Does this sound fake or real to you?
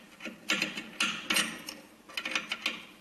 real